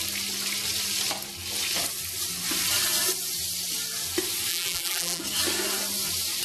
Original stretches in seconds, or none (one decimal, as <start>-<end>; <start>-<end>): 0.0-4.5; 5.2-6.4